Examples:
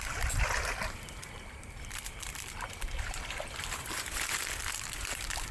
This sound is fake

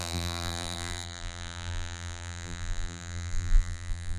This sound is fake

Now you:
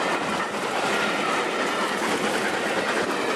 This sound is real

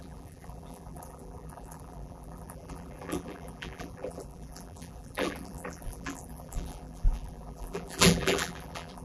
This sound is fake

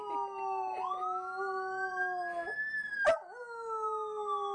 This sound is real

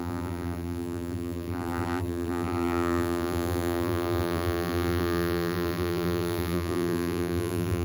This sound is fake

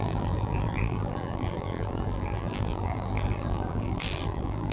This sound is fake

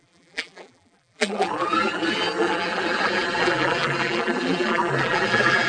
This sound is fake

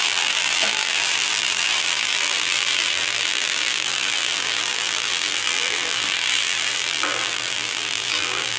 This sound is fake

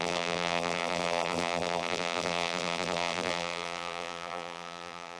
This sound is fake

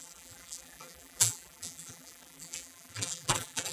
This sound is fake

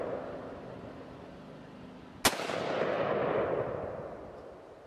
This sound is real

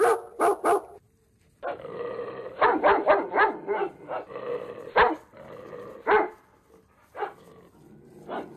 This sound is real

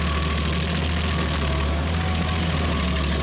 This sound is real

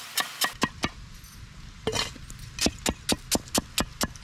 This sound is real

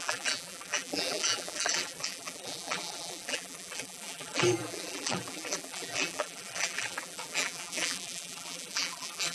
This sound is fake